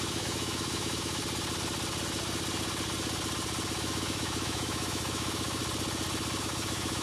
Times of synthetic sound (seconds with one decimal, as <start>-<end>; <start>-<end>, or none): 0.0-1.2; 3.8-5.6; 6.4-7.0